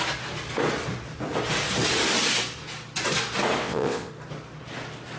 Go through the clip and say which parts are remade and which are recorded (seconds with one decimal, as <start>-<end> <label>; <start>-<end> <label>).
0.0-3.6 recorded; 3.6-4.1 remade; 4.1-5.2 recorded